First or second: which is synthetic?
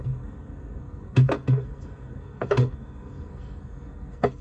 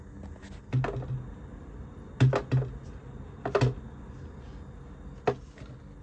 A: first